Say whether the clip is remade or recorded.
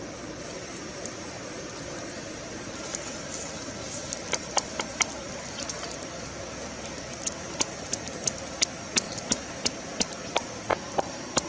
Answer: recorded